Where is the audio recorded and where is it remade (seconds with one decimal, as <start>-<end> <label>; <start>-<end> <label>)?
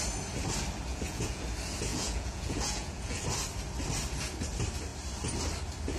0.0-0.9 recorded; 0.9-1.4 remade; 1.4-1.9 recorded; 1.9-3.2 remade; 3.2-6.0 recorded